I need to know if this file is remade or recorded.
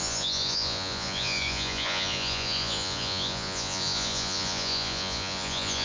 remade